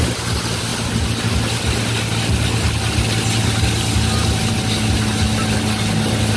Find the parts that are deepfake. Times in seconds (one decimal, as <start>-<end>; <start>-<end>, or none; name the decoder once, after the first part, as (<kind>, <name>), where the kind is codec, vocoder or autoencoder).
none